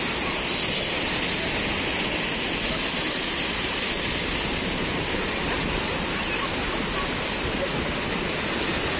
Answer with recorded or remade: recorded